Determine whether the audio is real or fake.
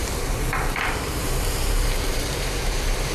fake